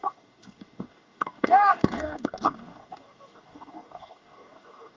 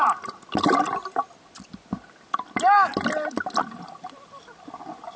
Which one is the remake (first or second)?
first